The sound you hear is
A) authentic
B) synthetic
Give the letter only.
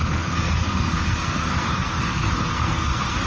B